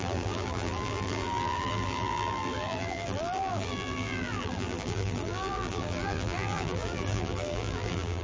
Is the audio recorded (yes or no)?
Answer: no